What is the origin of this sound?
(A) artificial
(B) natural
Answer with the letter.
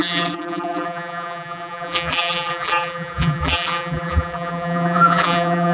A